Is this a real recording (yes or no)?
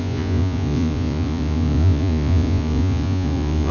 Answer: no